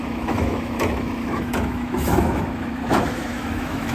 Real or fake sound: fake